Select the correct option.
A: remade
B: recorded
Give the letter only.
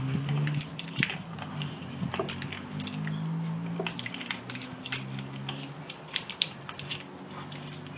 B